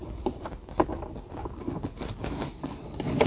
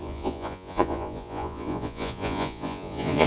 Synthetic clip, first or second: second